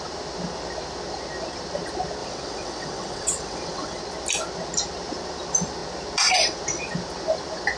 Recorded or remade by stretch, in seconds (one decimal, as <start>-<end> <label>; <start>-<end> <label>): 0.0-2.2 recorded; 2.2-4.0 remade; 4.0-7.8 recorded

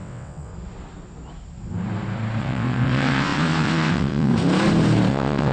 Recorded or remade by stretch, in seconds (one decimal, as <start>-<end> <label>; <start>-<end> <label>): 0.0-0.5 remade; 0.5-2.4 recorded; 2.4-4.3 remade; 4.3-5.1 recorded; 5.1-5.5 remade